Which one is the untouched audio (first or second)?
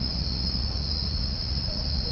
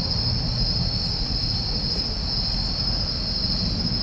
second